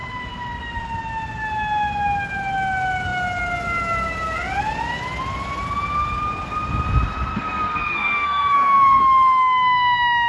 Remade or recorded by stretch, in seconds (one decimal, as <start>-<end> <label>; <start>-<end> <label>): 0.0-7.3 recorded; 7.3-9.0 remade; 9.0-10.3 recorded